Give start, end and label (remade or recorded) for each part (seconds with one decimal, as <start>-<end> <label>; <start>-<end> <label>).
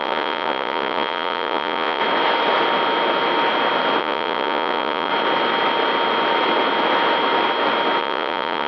0.0-2.0 remade; 2.0-4.0 recorded; 4.0-5.1 remade; 5.1-8.0 recorded; 8.0-8.7 remade